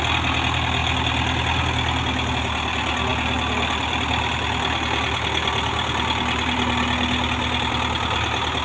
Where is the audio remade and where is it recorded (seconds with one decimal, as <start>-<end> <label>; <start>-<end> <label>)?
0.0-8.6 recorded